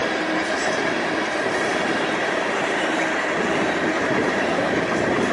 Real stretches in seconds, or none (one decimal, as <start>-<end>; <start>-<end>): 0.0-1.7